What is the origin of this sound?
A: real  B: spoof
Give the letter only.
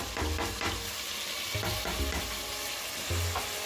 A